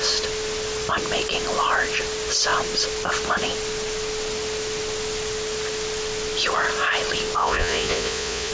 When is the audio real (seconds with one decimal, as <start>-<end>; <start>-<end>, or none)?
0.0-7.4